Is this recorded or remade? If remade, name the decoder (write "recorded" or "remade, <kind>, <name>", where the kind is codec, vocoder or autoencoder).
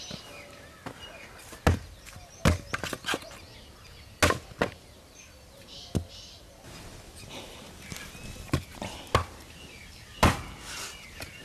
recorded